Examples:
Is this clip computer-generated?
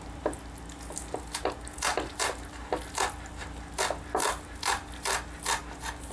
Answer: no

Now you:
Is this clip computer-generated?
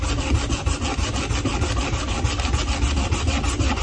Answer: no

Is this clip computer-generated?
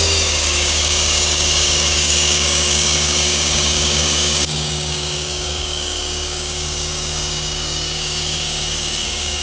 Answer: yes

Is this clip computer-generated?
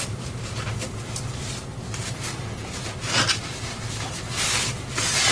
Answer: no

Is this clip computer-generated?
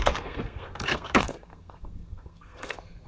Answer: yes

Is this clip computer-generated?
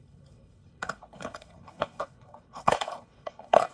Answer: yes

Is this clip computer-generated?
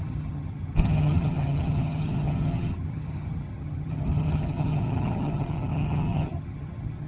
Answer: yes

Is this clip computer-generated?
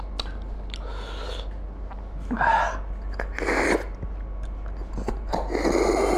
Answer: no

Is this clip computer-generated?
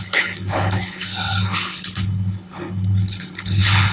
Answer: yes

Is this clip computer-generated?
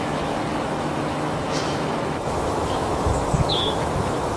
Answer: yes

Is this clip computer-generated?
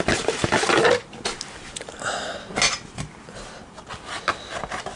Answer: no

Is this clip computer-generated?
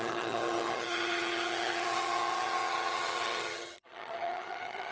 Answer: yes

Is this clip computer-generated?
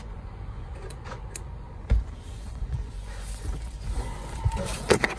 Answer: yes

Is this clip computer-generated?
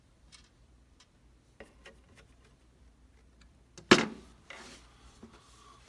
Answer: no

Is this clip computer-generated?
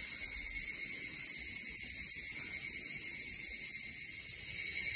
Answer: no